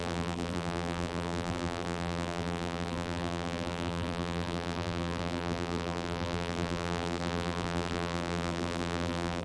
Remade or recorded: remade